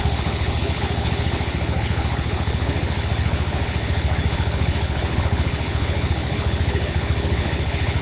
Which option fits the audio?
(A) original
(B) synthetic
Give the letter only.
B